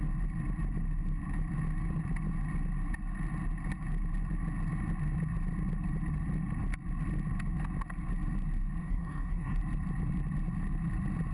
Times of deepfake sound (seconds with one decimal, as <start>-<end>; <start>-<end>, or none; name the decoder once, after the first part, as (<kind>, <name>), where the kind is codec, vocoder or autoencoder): 8.8-9.6 (codec, SNAC)